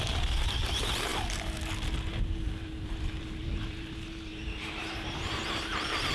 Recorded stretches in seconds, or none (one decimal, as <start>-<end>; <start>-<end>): 0.0-2.1